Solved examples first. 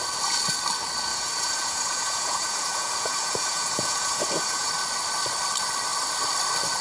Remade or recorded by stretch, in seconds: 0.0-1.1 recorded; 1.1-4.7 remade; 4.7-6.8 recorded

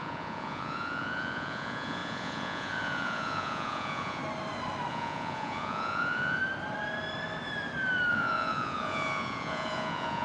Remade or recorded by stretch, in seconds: 0.0-4.2 remade; 4.2-4.9 recorded; 4.9-6.4 remade; 6.4-8.1 recorded; 8.1-10.2 remade

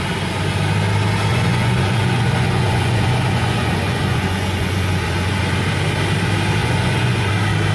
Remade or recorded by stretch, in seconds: 0.0-1.3 recorded; 1.3-5.4 remade; 5.4-6.6 recorded; 6.6-7.3 remade; 7.3-7.7 recorded